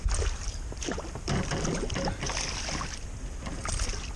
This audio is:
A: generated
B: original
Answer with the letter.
B